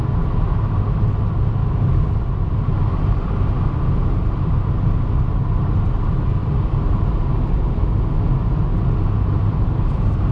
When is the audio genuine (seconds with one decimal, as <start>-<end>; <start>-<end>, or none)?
0.0-10.3